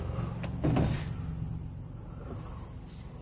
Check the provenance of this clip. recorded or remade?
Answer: recorded